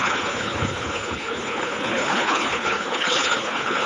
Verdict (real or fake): fake